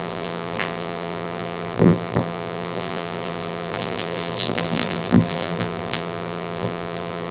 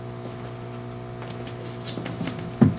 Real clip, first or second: second